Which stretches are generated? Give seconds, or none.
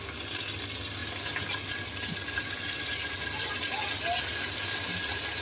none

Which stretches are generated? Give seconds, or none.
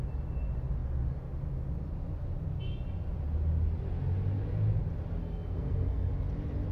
5.2-6.1 (codec, SNAC)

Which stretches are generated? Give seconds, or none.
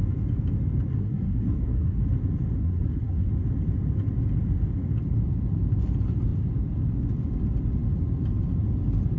0.9-2.0 (codec, SNAC); 2.6-3.3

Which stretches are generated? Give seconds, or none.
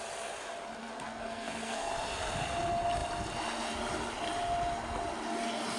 0.8-1.9 (codec, SNAC)